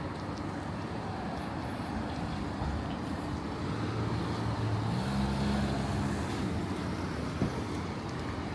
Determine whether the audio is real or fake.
real